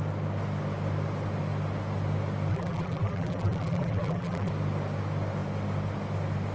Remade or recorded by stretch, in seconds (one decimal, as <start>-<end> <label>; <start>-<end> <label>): 0.0-2.5 recorded; 2.5-4.5 remade; 4.5-6.5 recorded